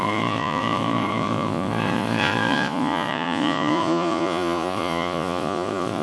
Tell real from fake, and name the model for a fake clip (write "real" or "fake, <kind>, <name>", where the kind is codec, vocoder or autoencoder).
fake, vocoder, Vocos